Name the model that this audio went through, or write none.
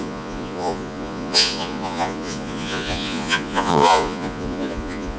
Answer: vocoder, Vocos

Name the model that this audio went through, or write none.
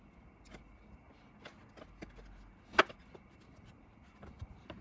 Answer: none